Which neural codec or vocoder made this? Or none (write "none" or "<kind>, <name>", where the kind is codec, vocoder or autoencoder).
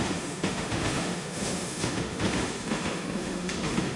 autoencoder, DAC-VAE